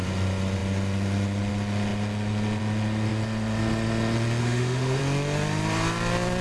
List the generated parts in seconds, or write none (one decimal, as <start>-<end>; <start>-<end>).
4.4-5.0